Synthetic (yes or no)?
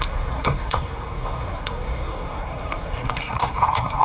yes